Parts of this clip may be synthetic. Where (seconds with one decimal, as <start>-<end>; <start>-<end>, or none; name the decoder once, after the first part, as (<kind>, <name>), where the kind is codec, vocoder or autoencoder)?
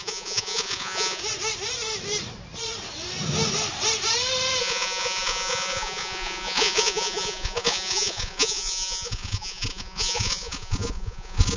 0.0-1.2 (vocoder, Vocos); 4.6-11.6